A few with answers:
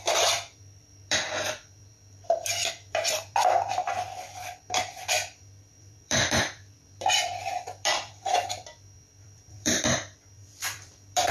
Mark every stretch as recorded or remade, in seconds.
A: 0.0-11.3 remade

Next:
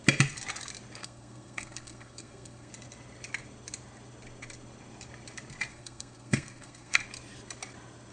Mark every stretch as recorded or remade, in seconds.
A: 0.0-1.0 recorded; 1.0-2.7 remade; 2.7-5.7 recorded; 5.7-7.0 remade; 7.0-8.1 recorded

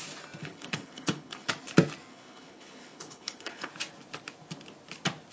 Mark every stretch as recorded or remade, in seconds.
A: 0.0-0.4 recorded; 0.4-1.5 remade; 1.5-2.1 recorded; 2.1-3.7 remade; 3.7-5.3 recorded

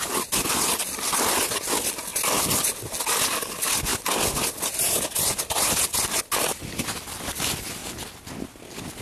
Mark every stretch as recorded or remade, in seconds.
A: 0.0-9.0 recorded